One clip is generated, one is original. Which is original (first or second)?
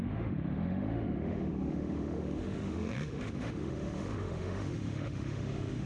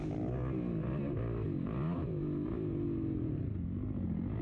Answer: second